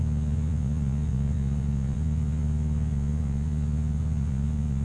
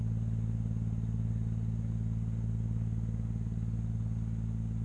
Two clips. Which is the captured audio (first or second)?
second